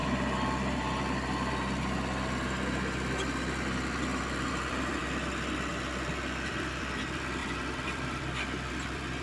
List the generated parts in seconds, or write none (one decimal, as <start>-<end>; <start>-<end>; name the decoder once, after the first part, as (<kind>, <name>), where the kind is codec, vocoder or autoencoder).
4.5-9.2 (vocoder, BigVGAN v2)